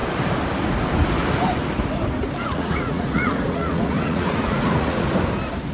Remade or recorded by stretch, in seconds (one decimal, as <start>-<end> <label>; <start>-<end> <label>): 0.0-2.4 recorded; 2.4-5.1 remade; 5.1-5.7 recorded